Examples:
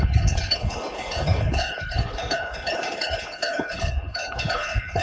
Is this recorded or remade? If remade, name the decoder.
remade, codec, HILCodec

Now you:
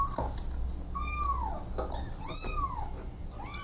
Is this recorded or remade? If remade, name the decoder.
recorded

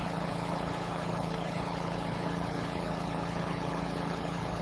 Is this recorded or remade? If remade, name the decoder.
remade, codec, HILCodec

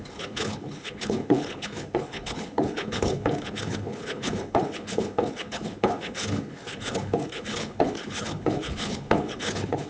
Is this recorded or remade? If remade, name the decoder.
remade, codec, HILCodec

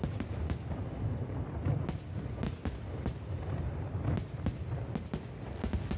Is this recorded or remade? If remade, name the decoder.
recorded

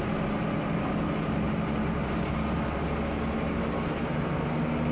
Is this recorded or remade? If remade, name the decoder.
recorded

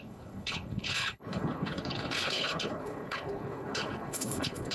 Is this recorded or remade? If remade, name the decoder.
remade, codec, HILCodec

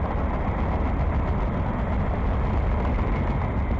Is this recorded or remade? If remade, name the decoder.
recorded